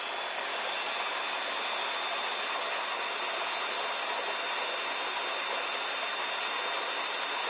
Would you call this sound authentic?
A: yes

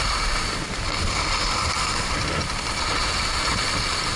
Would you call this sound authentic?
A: yes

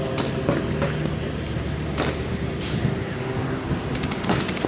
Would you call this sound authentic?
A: yes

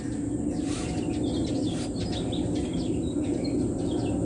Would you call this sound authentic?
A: yes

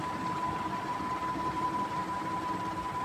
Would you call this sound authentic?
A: no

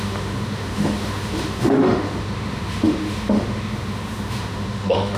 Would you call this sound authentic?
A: no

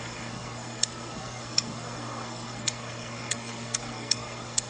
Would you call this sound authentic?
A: no